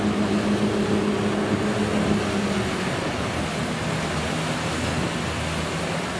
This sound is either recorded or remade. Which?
recorded